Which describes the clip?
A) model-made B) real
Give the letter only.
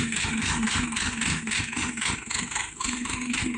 A